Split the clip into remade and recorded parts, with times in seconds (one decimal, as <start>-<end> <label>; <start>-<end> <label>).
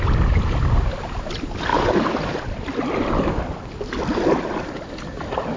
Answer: 0.0-5.6 recorded